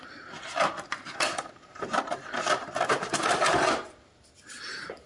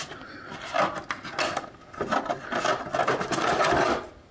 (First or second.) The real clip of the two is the second